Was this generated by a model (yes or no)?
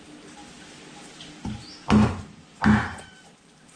no